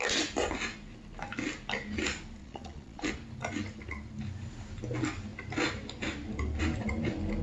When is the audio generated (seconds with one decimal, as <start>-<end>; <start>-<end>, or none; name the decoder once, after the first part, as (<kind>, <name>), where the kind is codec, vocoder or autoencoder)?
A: 2.4-3.1 (vocoder, Vocos)